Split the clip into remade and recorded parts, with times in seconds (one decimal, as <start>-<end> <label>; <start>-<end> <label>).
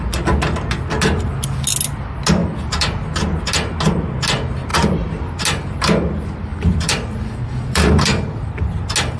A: 0.0-2.4 recorded; 2.4-3.4 remade; 3.4-4.7 recorded; 4.7-5.3 remade; 5.3-6.5 recorded; 6.5-8.6 remade; 8.6-9.2 recorded